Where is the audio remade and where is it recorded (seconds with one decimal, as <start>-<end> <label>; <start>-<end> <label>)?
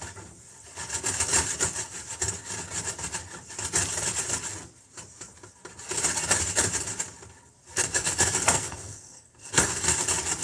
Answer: 0.0-7.8 recorded; 7.8-10.0 remade; 10.0-10.4 recorded